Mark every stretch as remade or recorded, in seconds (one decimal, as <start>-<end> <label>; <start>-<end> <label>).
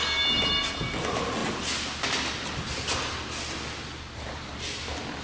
0.0-5.2 recorded